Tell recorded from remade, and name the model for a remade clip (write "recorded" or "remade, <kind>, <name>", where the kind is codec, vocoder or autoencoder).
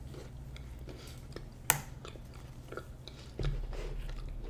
recorded